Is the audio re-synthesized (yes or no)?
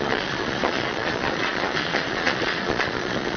yes